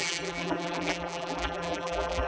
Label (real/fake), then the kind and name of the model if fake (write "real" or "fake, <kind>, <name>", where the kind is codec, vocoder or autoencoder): fake, vocoder, BigVGAN v2